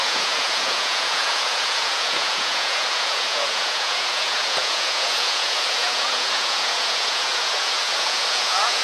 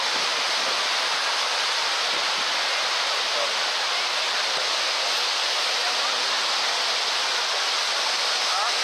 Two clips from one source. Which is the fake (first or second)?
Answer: first